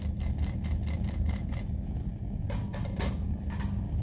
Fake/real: real